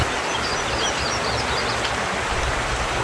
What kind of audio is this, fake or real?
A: real